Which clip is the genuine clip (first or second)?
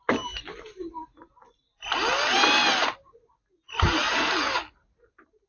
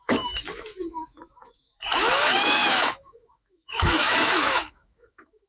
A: first